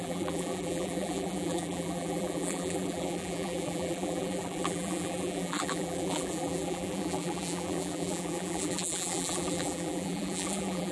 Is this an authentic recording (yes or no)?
no